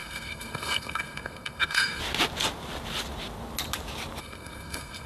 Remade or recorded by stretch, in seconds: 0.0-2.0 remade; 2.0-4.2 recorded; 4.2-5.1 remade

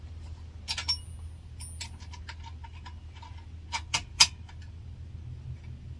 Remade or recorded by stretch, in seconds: 0.0-6.0 recorded